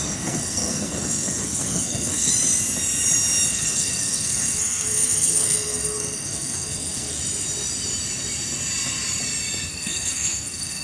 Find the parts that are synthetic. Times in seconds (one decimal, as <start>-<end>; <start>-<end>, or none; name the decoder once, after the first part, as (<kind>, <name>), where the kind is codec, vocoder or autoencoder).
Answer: 0.0-2.3 (codec, SNAC); 3.5-7.2; 9.7-10.8